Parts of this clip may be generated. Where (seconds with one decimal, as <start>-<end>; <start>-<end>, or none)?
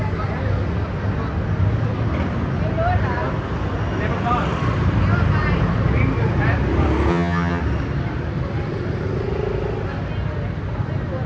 7.1-7.6